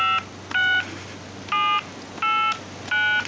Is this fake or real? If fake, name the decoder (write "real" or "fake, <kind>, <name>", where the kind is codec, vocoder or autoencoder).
real